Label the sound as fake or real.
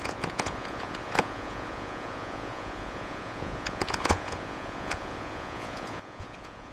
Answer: fake